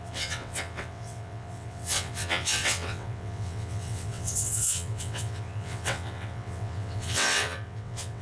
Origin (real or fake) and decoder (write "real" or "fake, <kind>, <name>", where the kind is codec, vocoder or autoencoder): fake, vocoder, WaveNeXt